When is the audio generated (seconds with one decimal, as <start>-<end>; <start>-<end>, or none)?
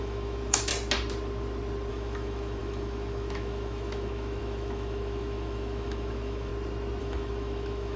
0.0-0.7; 1.9-6.5; 7.0-8.0